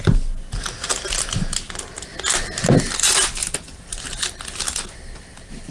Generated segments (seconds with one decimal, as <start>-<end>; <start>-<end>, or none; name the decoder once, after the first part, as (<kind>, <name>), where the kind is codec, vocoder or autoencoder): none